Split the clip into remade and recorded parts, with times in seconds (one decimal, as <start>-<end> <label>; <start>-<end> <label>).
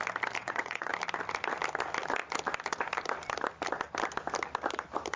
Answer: 0.0-0.4 recorded; 0.4-0.9 remade; 0.9-5.2 recorded